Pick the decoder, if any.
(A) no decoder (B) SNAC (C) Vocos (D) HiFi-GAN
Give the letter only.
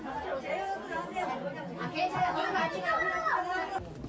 A